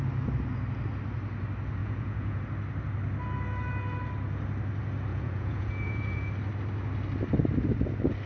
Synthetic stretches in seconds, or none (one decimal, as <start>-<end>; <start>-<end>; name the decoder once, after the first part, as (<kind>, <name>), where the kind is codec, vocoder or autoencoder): 1.8-2.4 (vocoder, Vocos); 5.1-6.3